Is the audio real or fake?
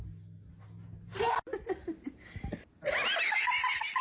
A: real